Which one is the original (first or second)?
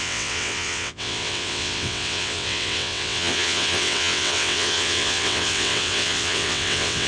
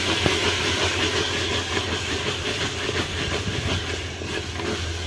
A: second